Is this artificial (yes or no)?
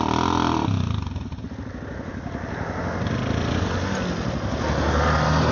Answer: no